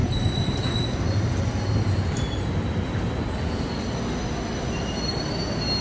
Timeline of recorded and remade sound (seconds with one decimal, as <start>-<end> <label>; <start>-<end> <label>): 0.0-5.8 recorded